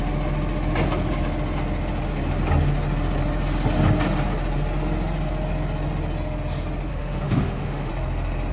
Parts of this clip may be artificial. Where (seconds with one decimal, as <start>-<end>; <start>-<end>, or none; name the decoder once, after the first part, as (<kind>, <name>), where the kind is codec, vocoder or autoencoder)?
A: 6.9-7.9 (autoencoder, DAC-VAE)